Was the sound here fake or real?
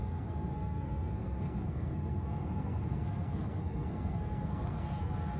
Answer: fake